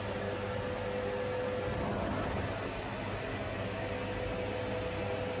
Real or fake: real